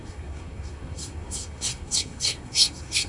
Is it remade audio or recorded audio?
remade